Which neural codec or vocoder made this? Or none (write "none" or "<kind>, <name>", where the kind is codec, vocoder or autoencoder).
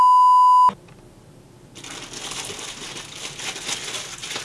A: none